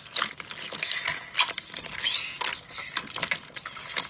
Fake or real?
real